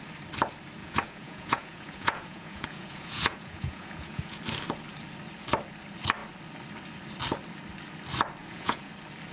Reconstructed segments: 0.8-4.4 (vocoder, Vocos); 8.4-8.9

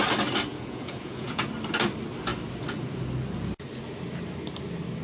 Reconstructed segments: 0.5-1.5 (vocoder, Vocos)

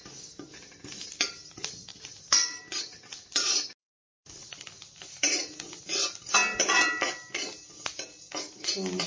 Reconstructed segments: 1.9-2.6 (vocoder, BigVGAN v2); 3.8-5.8

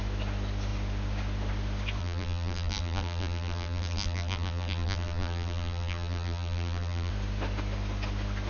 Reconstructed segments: 2.0-7.1 (vocoder, BigVGAN v2)

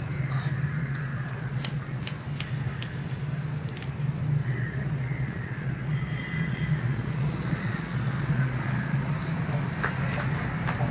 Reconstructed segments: 0.8-2.0 (vocoder, Vocos); 4.4-9.1

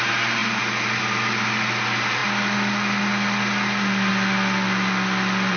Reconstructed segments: none